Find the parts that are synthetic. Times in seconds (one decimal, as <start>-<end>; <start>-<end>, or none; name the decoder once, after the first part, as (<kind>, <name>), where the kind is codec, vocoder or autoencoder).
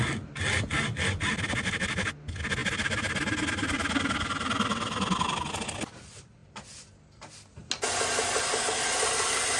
none